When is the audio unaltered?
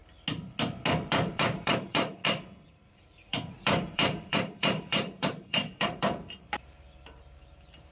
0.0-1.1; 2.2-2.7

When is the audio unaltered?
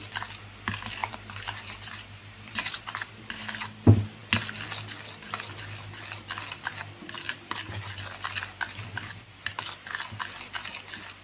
0.0-1.0; 3.3-11.2